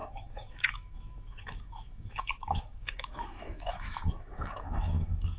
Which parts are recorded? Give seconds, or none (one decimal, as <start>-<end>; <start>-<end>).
none